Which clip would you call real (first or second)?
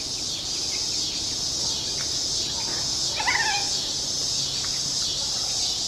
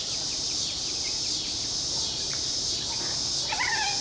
first